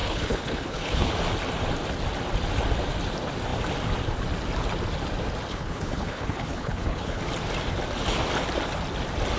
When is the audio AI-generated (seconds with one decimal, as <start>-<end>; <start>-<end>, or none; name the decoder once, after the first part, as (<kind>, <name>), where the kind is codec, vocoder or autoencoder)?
0.0-1.1 (codec, HILCodec); 5.5-7.2